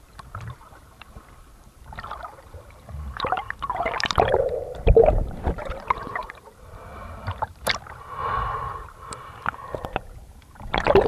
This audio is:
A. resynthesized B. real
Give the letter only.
A